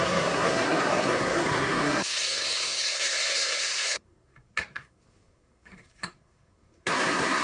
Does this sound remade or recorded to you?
remade